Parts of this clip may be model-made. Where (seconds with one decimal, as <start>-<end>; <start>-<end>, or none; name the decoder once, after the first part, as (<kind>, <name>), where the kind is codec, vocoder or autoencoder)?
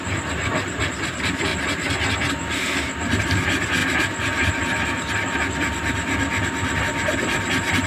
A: 0.0-1.5 (vocoder, BigVGAN v2); 3.2-3.8; 6.8-7.9